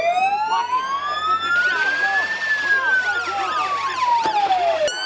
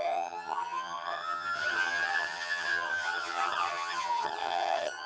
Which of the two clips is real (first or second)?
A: first